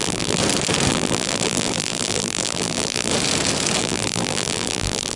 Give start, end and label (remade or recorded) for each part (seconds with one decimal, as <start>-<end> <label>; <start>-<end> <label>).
0.0-0.4 remade; 0.4-0.9 recorded; 0.9-3.1 remade; 3.1-3.8 recorded; 3.8-5.2 remade